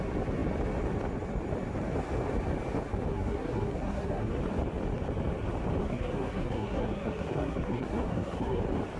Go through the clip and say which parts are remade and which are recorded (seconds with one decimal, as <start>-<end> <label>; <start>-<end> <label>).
0.0-3.1 recorded; 3.1-4.4 remade; 4.4-5.8 recorded; 5.8-8.6 remade; 8.6-9.0 recorded

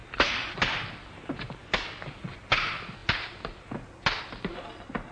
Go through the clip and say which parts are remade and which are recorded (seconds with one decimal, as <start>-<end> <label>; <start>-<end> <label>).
0.0-1.6 recorded; 1.6-2.2 remade; 2.2-5.1 recorded

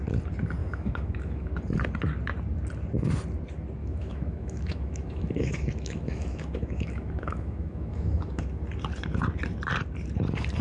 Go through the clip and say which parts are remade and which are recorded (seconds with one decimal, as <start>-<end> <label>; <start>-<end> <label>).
0.0-0.6 recorded; 0.6-1.5 remade; 1.5-3.8 recorded; 3.8-8.4 remade; 8.4-10.6 recorded

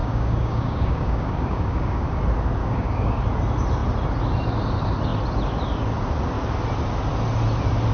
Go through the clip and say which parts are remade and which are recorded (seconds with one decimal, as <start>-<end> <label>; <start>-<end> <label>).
0.0-2.2 remade; 2.2-2.6 recorded; 2.6-3.2 remade; 3.2-7.9 recorded

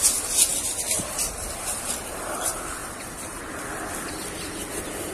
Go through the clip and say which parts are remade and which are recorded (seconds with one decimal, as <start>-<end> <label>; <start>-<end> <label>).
0.0-0.5 recorded; 0.5-2.4 remade; 2.4-2.8 recorded; 2.8-3.4 remade; 3.4-5.1 recorded